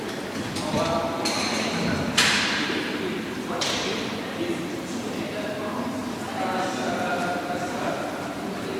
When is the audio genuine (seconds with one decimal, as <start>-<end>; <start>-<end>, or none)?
6.0-6.6